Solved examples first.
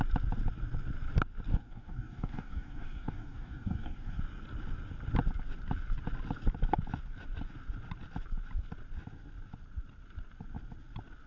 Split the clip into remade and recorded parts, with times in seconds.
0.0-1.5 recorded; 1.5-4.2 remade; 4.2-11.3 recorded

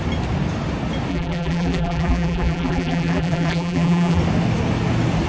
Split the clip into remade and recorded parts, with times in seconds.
0.0-1.1 recorded; 1.1-4.2 remade; 4.2-5.3 recorded

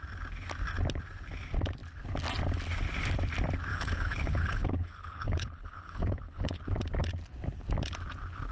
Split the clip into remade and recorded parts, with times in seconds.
0.0-3.7 recorded; 3.7-6.6 remade; 6.6-8.5 recorded

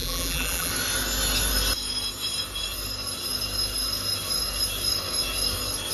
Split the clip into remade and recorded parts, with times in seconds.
0.0-0.7 remade; 0.7-5.9 recorded